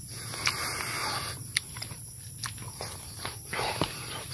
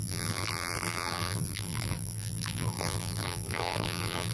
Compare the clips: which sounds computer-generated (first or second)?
second